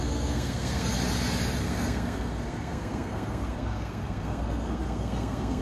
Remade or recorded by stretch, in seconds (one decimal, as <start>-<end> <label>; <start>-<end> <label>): 0.0-0.9 remade; 0.9-1.6 recorded; 1.6-5.6 remade